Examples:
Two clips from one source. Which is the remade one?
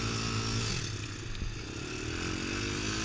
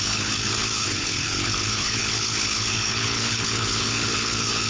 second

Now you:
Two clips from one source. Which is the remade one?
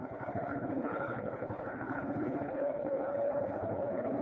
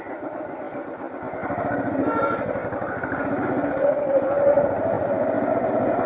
first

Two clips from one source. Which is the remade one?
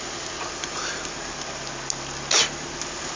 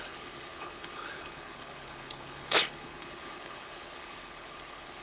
second